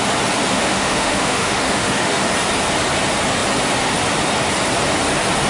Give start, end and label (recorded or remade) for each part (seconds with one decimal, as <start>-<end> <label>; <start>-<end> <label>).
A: 0.0-0.5 recorded; 0.5-2.3 remade; 2.3-5.5 recorded

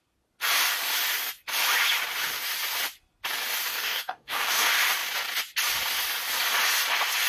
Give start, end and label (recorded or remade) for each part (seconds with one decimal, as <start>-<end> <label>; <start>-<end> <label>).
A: 0.0-3.7 recorded; 3.7-4.5 remade; 4.5-7.3 recorded

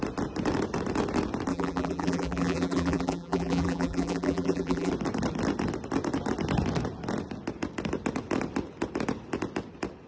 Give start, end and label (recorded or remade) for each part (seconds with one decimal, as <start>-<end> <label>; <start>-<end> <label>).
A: 0.0-1.5 recorded; 1.5-4.9 remade; 4.9-10.1 recorded

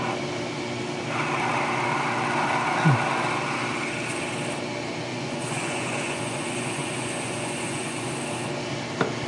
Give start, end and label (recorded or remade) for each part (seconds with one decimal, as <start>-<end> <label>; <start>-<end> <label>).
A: 0.0-5.1 recorded; 5.1-8.1 remade; 8.1-9.3 recorded

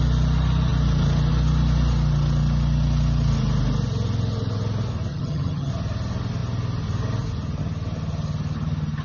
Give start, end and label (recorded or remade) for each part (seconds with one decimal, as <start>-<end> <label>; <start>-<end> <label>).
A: 0.0-5.1 recorded; 5.1-5.7 remade; 5.7-9.0 recorded

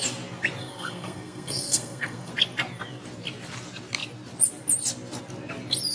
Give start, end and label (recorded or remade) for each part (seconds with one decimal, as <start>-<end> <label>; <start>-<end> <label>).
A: 0.0-0.6 recorded; 0.6-2.3 remade; 2.3-5.9 recorded